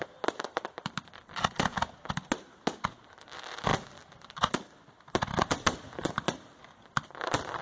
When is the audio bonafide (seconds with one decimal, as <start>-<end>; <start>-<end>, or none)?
0.0-7.6